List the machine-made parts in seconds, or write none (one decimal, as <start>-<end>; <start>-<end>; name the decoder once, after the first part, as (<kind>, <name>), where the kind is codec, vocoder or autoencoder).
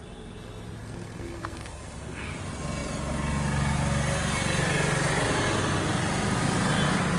0.8-2.3 (codec, SNAC)